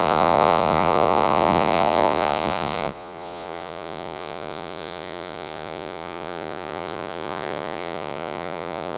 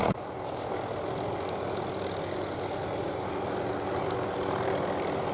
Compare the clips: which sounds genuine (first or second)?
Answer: second